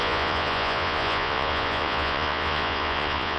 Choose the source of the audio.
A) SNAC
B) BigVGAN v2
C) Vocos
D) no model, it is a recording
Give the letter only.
C